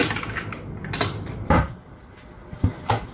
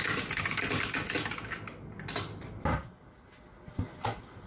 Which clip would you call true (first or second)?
second